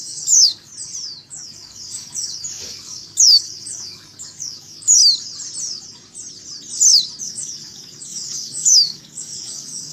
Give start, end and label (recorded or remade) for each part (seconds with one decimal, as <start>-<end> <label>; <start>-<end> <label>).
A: 0.0-0.7 remade; 0.7-1.3 recorded; 1.3-5.0 remade; 5.0-7.2 recorded; 7.2-9.9 remade